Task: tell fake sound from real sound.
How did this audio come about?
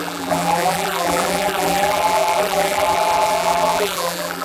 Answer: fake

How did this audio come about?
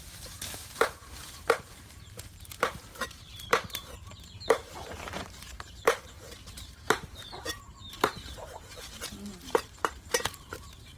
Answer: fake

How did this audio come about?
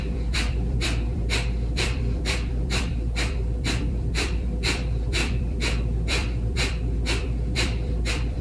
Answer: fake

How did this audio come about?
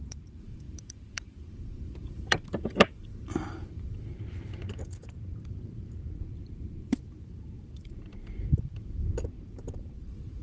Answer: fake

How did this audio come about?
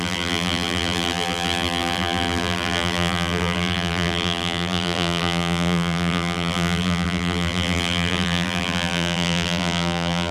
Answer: fake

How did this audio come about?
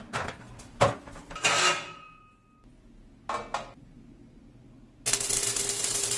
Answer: real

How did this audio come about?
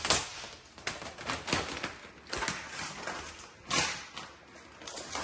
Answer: real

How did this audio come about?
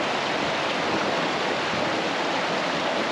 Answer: real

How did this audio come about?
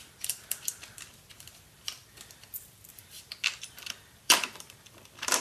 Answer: fake